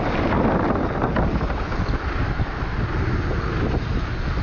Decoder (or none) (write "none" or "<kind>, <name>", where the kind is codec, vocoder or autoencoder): none